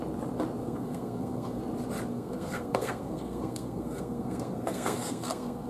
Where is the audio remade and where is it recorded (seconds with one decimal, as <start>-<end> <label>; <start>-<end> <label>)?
0.0-0.6 recorded; 0.6-1.6 remade; 1.6-2.1 recorded; 2.1-5.7 remade